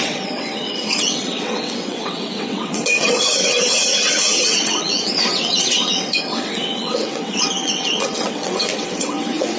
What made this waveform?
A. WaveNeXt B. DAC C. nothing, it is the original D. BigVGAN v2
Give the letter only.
A